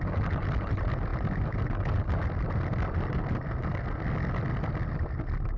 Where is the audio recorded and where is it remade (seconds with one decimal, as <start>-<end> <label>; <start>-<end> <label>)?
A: 0.0-5.6 recorded